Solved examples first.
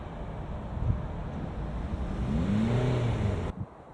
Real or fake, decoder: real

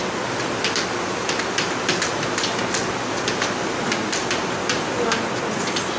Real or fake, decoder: real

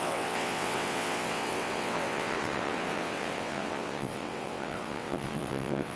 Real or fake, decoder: fake, vocoder, WaveNeXt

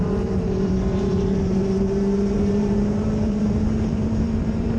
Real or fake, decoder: fake, vocoder, BigVGAN v2